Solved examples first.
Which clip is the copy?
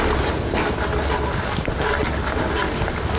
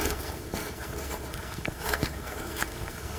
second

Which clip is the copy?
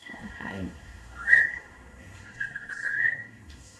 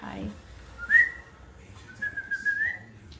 first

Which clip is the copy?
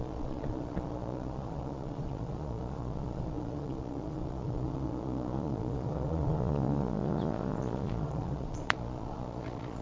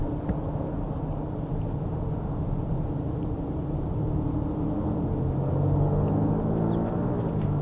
first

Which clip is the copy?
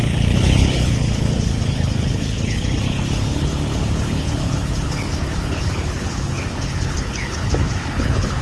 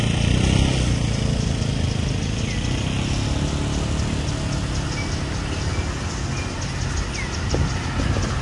first